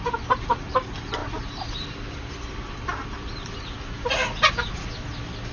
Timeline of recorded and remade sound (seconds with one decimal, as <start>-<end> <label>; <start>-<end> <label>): 0.0-5.5 recorded